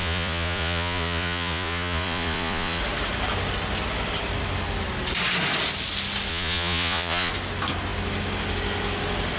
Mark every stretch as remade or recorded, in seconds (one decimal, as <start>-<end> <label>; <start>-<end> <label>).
0.0-2.8 remade; 2.8-6.3 recorded; 6.3-7.3 remade; 7.3-9.4 recorded